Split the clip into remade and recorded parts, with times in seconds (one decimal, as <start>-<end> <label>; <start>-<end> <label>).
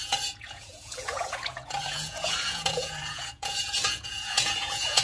0.0-5.0 remade